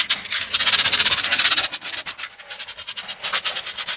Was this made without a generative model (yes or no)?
no